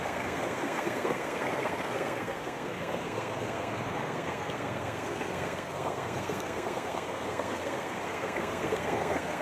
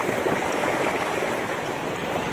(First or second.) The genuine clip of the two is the second